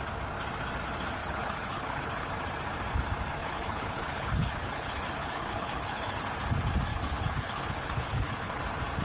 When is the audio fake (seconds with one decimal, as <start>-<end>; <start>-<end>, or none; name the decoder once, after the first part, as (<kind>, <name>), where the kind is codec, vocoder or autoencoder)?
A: 1.2-2.3 (codec, HILCodec); 3.4-6.2; 6.9-8.6